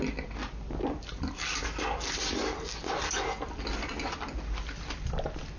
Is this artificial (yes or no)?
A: no